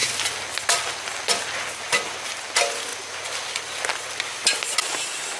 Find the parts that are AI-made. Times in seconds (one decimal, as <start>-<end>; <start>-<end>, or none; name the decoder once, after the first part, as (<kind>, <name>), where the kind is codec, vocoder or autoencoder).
none